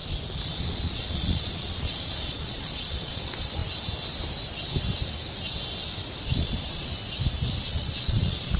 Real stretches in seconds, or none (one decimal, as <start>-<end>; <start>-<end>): 0.0-0.6; 3.6-6.3; 6.9-7.6